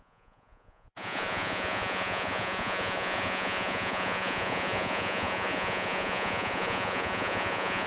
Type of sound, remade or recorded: remade